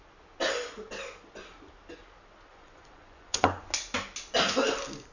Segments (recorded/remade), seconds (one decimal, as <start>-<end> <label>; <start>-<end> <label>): 0.0-2.5 recorded; 2.5-3.7 remade; 3.7-5.1 recorded